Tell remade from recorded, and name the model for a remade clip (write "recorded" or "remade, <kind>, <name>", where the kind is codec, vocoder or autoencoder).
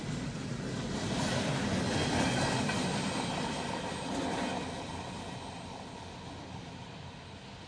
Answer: recorded